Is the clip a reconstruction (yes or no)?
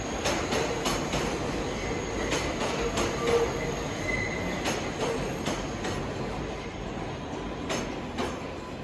no